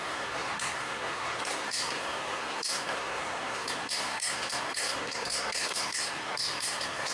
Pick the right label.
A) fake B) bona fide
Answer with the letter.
A